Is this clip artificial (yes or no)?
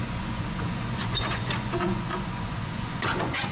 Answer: yes